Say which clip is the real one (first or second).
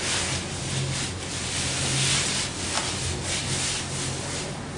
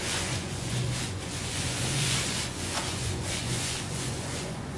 first